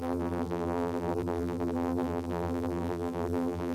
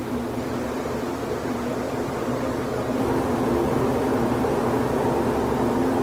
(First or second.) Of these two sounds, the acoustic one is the second